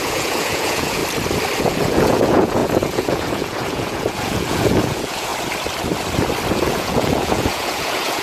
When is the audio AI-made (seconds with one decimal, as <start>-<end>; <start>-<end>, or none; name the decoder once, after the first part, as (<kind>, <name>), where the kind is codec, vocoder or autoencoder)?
0.0-1.0 (vocoder, Vocos); 1.6-5.3; 6.5-8.2